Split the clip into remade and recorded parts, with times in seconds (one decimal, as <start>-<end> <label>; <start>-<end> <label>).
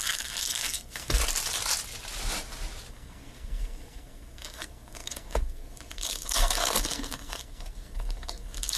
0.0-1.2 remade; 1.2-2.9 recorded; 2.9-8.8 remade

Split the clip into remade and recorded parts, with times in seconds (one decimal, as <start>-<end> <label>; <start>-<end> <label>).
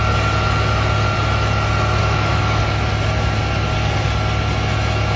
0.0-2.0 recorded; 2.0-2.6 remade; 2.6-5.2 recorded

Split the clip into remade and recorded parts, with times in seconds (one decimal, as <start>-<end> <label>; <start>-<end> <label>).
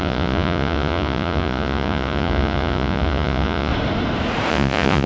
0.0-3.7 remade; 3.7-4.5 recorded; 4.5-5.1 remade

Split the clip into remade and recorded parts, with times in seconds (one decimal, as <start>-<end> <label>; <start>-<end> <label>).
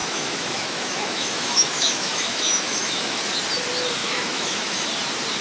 0.0-3.2 remade; 3.2-4.0 recorded; 4.0-4.9 remade; 4.9-5.4 recorded